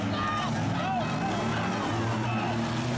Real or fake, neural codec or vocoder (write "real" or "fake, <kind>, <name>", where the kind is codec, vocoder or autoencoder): real